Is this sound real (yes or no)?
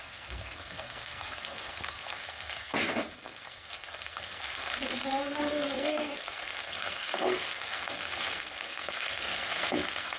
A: no